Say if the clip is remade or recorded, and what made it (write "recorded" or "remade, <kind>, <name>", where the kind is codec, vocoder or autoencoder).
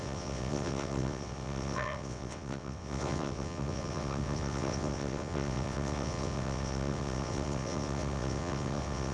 remade, vocoder, WaveNeXt